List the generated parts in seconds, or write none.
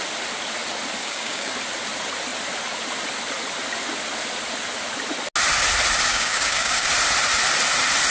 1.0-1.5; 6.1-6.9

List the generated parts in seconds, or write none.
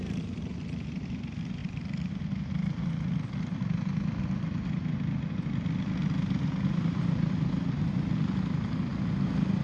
1.6-2.2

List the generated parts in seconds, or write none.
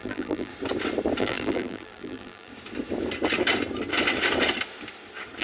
0.0-0.5; 1.2-2.5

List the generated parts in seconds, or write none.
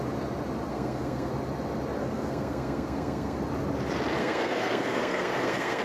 0.7-1.3; 2.0-3.4; 4.2-5.8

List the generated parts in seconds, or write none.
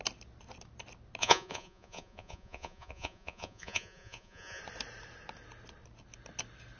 1.2-4.6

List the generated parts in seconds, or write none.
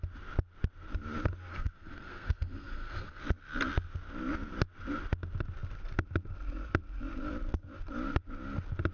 1.5-3.2